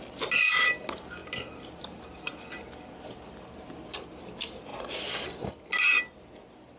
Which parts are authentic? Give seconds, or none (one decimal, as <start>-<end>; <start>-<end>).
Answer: 0.0-6.8